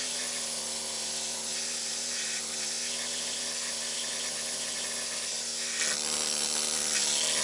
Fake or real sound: real